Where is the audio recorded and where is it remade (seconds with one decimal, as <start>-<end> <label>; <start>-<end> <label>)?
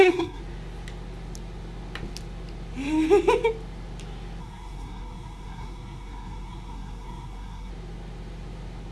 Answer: 0.0-0.4 remade; 0.4-4.4 recorded; 4.4-7.7 remade; 7.7-8.9 recorded